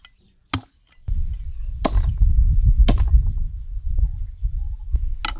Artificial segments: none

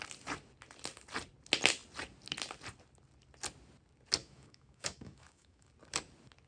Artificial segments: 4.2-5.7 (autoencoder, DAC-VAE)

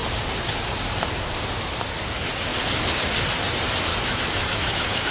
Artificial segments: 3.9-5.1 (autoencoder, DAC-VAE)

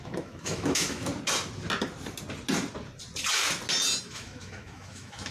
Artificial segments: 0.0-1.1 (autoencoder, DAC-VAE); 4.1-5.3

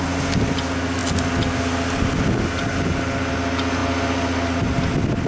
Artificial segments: none

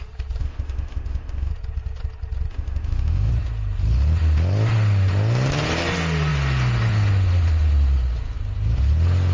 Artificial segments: 0.4-1.5 (autoencoder, DAC-VAE); 2.5-3.3

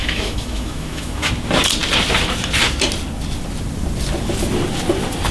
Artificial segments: 0.0-1.3 (autoencoder, DAC-VAE)